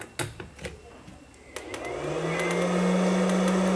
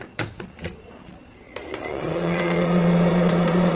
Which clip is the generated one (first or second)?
second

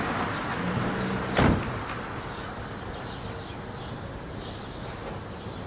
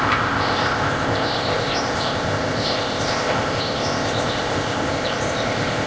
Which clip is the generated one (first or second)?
second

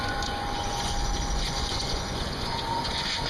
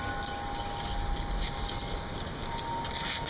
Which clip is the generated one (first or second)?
first